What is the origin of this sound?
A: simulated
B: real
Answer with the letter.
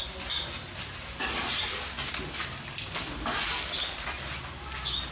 B